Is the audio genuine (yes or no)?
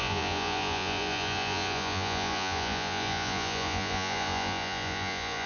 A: no